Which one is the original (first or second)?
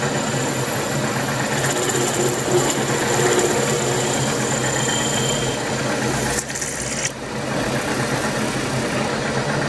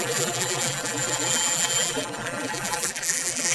first